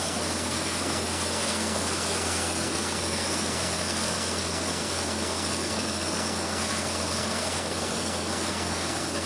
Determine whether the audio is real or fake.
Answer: fake